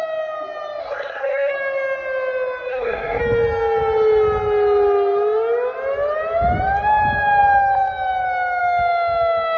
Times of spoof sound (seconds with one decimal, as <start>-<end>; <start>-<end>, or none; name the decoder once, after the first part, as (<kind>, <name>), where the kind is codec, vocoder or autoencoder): 0.8-1.5 (codec, SNAC); 2.7-3.2